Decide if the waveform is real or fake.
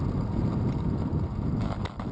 real